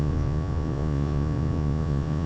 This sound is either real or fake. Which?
fake